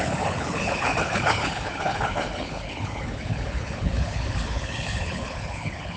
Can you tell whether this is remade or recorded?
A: remade